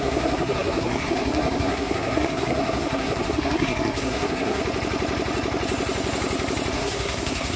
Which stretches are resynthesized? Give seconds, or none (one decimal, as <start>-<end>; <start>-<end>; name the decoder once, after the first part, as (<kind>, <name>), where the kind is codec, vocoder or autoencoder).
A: 0.0-4.6 (codec, SNAC); 6.7-7.6